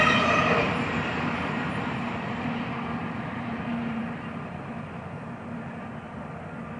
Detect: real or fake fake